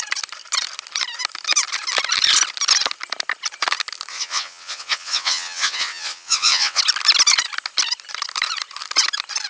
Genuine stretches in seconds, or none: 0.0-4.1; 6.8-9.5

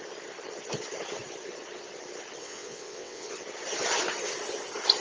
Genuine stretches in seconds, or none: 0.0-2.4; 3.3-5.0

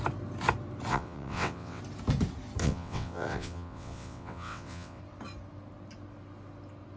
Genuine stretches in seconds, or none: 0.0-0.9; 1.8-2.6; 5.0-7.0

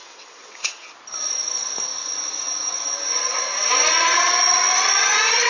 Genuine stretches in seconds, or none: 0.9-5.5